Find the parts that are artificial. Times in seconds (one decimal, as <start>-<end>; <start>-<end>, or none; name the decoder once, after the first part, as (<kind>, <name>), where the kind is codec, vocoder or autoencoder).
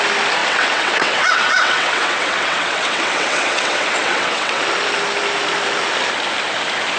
0.4-4.6 (vocoder, WaveNeXt)